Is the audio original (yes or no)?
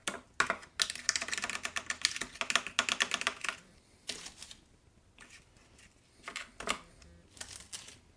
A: yes